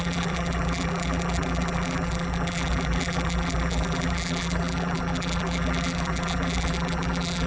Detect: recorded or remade remade